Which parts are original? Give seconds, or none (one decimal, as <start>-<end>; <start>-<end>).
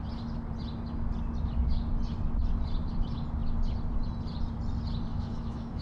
0.0-5.1